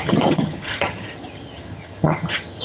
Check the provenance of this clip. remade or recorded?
remade